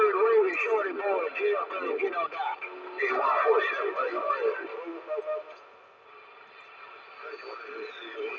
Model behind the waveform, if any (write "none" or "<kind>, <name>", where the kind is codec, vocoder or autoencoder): none